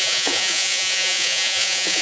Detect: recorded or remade remade